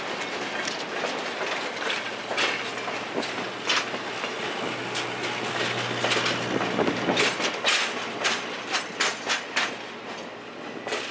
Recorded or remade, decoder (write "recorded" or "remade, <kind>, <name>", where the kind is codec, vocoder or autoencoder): recorded